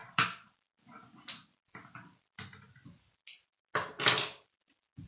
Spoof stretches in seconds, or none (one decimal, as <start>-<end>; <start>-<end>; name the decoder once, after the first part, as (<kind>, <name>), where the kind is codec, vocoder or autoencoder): none